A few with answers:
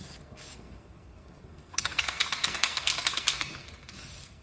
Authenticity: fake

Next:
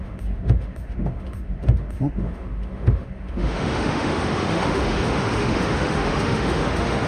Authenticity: fake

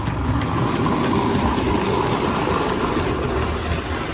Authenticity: real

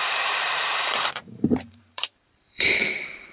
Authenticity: fake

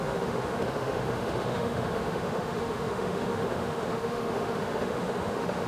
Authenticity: fake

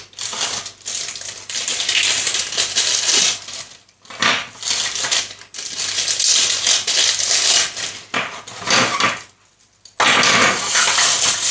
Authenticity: real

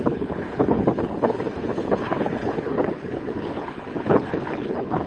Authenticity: fake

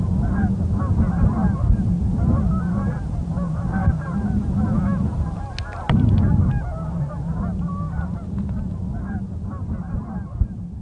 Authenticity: real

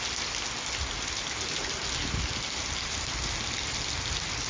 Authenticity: real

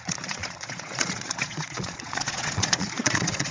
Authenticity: fake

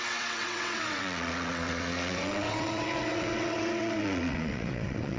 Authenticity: fake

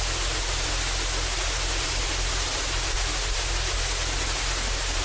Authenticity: fake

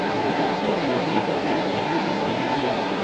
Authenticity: fake